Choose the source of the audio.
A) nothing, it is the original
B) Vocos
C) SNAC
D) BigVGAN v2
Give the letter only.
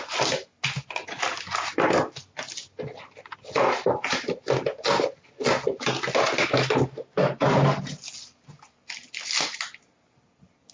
A